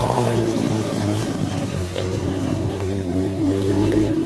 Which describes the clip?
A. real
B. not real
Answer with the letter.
B